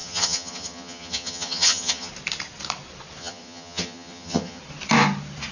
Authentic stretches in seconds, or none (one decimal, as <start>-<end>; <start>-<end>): 2.1-3.2; 4.6-5.5